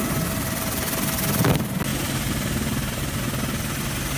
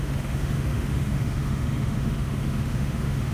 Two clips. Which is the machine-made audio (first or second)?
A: second